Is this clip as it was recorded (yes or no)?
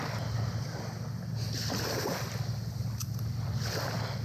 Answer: yes